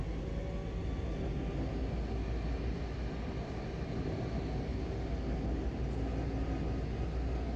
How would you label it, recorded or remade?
recorded